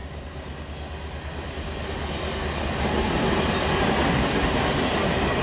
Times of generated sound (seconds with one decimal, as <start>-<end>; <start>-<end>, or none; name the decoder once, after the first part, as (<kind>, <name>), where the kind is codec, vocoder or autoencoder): none